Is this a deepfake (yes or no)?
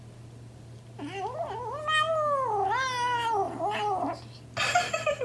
no